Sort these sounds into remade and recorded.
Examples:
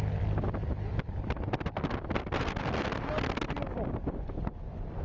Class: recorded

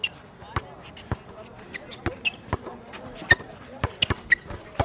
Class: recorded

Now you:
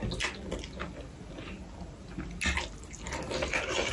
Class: recorded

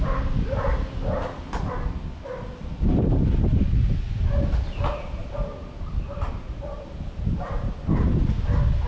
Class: recorded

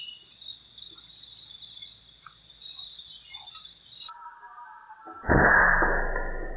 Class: recorded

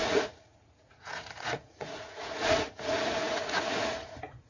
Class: remade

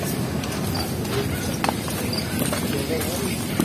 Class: recorded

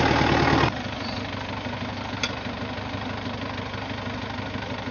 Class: recorded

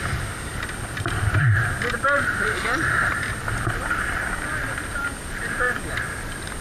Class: recorded